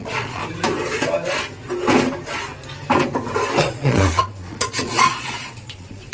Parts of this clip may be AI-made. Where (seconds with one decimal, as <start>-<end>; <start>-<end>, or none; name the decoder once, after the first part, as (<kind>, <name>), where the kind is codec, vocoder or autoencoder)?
0.0-0.4 (vocoder, Vocos); 3.6-6.1